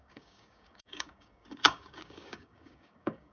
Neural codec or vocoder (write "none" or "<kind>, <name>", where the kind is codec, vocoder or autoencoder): codec, DAC